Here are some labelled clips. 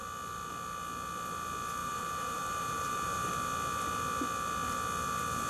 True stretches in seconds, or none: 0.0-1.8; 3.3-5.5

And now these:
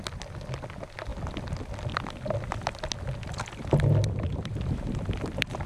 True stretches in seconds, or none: 0.0-5.7